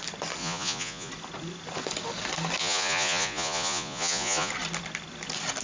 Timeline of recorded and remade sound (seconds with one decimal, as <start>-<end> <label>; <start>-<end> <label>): 0.0-0.4 recorded; 0.4-1.1 remade; 1.1-2.6 recorded; 2.6-4.5 remade; 4.5-5.6 recorded